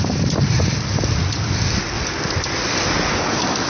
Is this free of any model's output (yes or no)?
yes